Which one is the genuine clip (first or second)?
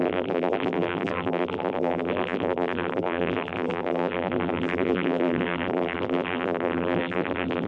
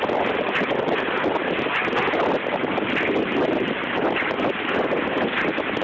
second